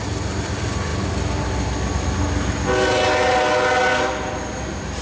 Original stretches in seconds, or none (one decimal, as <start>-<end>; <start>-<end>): 0.0-5.0